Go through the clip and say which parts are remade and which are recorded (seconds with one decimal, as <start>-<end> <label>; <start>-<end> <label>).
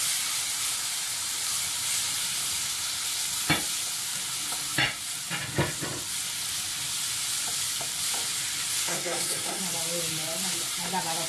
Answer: 0.0-8.8 recorded; 8.8-9.6 remade; 9.6-11.3 recorded